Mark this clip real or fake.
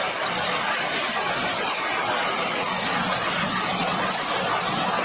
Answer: real